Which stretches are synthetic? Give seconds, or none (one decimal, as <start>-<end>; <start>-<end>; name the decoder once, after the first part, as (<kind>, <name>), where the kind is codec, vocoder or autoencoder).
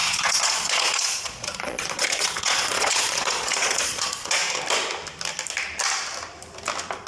0.0-4.4 (vocoder, Vocos)